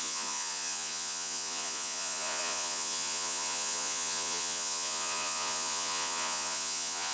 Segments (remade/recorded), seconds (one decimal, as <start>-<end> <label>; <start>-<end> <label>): 0.0-7.1 remade